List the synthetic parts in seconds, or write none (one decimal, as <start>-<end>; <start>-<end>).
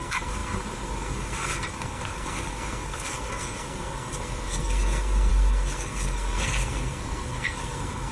0.0-8.1